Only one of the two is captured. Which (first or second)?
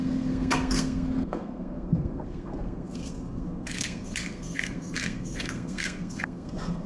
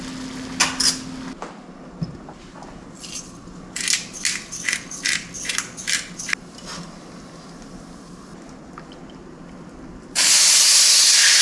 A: second